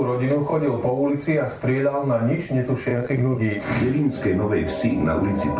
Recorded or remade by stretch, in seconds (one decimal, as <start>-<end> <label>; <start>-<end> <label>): 0.0-2.9 recorded; 2.9-3.6 remade; 3.6-5.6 recorded